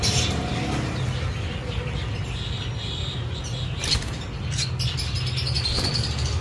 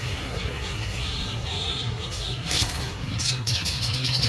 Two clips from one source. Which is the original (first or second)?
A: first